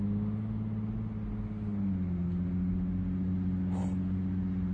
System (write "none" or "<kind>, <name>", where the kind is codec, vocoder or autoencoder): none